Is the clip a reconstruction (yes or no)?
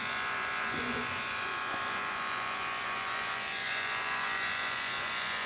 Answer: yes